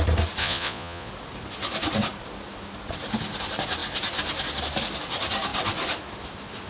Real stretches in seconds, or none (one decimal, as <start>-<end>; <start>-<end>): 0.0-0.4; 1.1-6.7